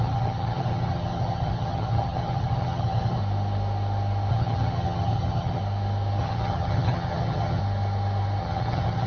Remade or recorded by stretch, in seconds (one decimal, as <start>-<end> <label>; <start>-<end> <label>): 0.0-3.2 remade; 3.2-4.3 recorded; 4.3-5.6 remade; 5.6-6.2 recorded; 6.2-7.6 remade; 7.6-8.4 recorded; 8.4-9.1 remade